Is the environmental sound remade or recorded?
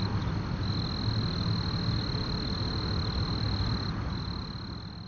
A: recorded